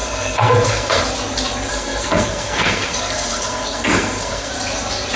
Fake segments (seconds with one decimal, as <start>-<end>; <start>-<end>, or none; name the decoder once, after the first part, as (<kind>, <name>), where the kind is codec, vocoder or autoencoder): 0.0-1.0 (codec, SNAC); 1.7-4.5